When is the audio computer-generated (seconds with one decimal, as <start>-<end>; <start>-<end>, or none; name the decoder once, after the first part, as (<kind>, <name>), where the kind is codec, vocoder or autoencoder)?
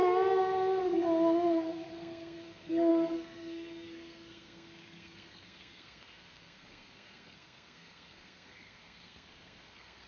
0.8-10.1 (codec, SNAC)